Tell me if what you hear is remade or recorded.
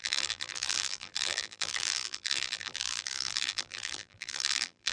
remade